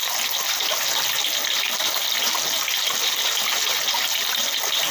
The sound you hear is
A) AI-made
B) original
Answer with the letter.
B